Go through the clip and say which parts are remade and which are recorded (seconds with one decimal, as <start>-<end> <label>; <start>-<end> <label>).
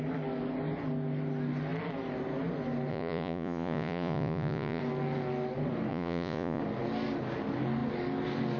0.0-2.9 recorded; 2.9-4.8 remade; 4.8-5.9 recorded; 5.9-6.6 remade; 6.6-8.6 recorded